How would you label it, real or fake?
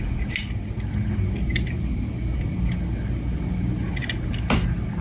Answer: real